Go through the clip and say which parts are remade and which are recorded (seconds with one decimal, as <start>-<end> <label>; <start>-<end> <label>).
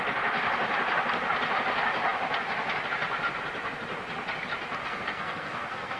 0.0-4.8 recorded; 4.8-6.0 remade